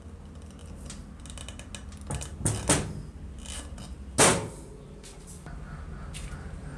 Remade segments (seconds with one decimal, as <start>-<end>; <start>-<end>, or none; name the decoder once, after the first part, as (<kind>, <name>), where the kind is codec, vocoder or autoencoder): none